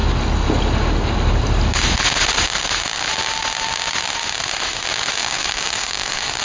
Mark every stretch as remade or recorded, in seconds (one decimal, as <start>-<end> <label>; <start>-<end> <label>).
0.0-5.2 recorded; 5.2-6.4 remade